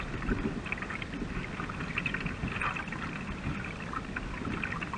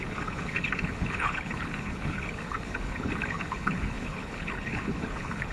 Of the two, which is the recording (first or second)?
first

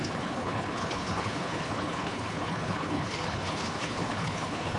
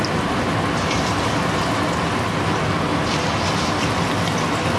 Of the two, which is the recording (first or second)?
second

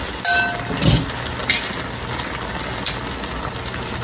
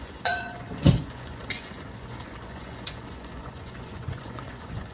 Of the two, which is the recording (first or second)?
first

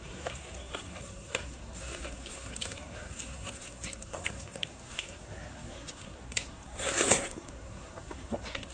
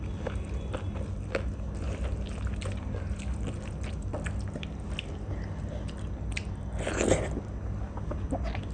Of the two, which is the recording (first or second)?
second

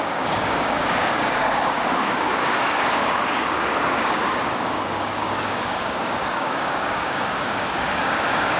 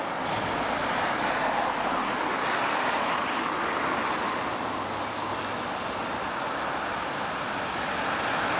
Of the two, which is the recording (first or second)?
second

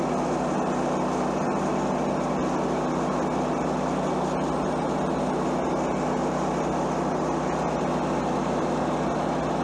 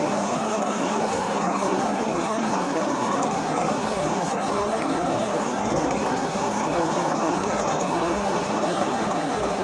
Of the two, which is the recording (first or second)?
first